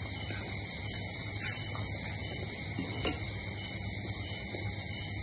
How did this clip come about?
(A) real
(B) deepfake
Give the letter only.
A